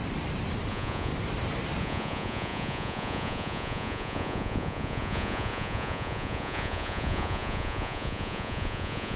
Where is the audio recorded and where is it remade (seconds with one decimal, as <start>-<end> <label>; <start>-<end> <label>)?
0.0-0.7 recorded; 0.7-1.1 remade; 1.1-1.8 recorded; 1.8-9.2 remade